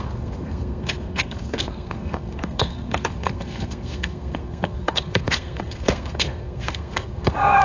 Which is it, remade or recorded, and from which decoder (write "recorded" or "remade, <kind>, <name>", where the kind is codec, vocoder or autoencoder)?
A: remade, codec, SNAC